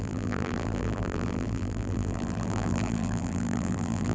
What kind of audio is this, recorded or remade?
remade